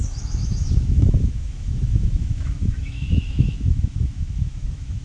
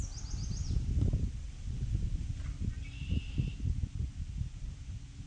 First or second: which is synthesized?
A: first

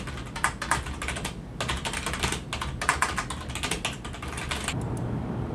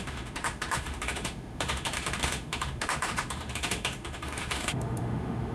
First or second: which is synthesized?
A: second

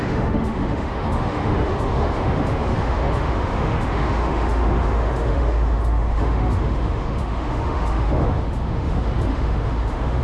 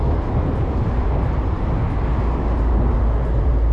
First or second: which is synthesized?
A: first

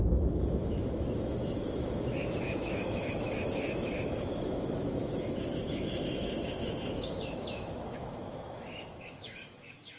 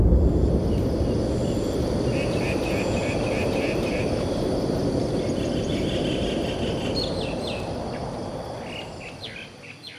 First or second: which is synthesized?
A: first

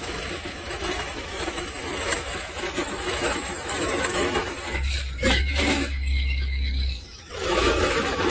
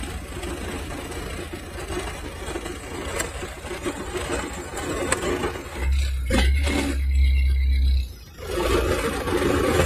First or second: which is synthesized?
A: first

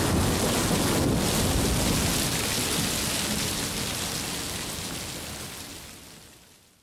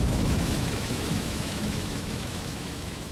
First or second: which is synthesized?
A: second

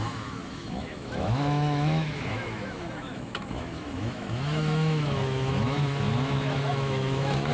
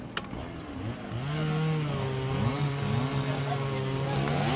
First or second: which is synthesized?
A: first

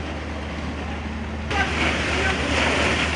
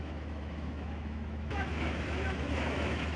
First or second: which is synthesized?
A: second